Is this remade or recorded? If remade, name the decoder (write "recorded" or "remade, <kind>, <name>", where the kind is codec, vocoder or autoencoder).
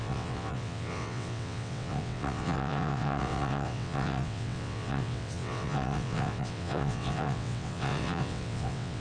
remade, vocoder, WaveNeXt